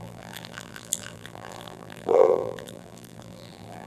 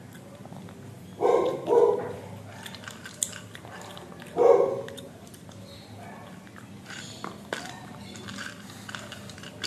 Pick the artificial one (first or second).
first